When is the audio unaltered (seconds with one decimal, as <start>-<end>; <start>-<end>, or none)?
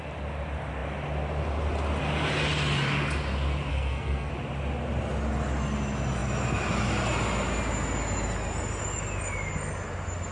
0.0-3.7; 4.3-10.3